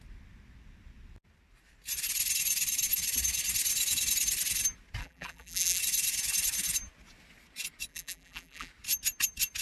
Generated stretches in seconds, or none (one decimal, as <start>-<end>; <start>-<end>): 5.0-5.8; 7.9-8.7